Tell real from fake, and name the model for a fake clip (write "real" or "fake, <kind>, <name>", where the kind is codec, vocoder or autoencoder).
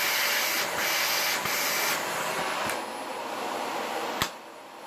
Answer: real